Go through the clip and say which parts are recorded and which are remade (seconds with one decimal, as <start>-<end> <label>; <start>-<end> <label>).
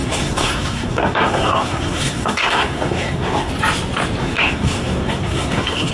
0.0-3.5 remade; 3.5-4.2 recorded; 4.2-5.9 remade